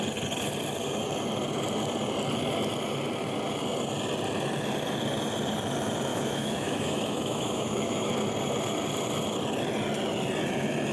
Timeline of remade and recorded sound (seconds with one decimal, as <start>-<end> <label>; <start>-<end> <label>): 0.0-6.1 recorded; 6.1-8.1 remade; 8.1-10.9 recorded